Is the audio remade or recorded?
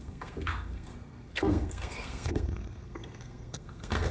remade